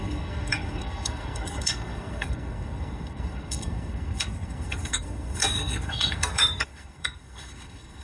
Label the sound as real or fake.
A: fake